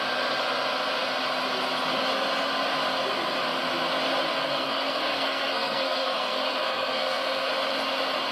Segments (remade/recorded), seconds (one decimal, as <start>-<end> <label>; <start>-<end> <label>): 0.0-4.5 recorded; 4.5-7.5 remade; 7.5-8.3 recorded